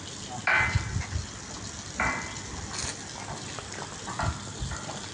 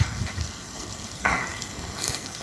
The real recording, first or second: first